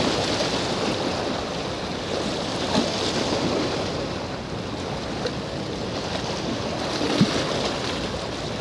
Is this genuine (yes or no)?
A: yes